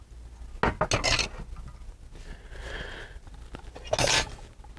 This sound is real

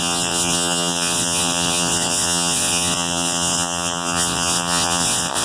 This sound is fake